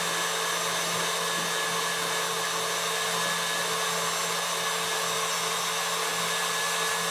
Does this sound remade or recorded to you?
recorded